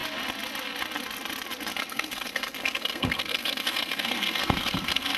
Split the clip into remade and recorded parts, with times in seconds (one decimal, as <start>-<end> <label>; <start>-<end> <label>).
0.0-1.8 recorded; 1.8-5.2 remade